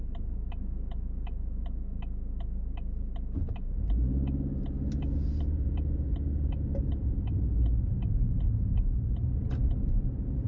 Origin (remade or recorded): recorded